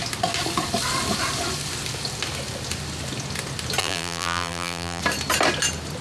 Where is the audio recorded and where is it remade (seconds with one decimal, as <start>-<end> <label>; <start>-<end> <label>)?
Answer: 0.0-3.8 recorded; 3.8-5.0 remade; 5.0-6.0 recorded